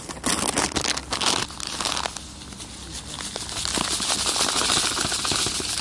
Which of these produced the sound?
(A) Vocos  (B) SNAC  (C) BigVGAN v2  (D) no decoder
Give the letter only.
D